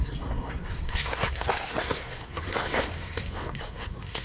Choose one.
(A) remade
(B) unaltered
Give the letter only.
A